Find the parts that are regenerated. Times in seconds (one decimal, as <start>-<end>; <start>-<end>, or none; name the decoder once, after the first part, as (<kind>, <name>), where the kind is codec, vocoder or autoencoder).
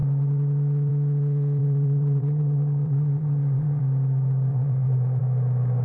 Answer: 1.6-3.8 (vocoder, Vocos); 4.5-5.2